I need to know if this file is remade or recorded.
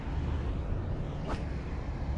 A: recorded